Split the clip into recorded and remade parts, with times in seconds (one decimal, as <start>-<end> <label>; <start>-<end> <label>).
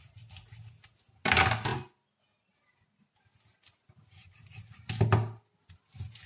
0.0-6.3 recorded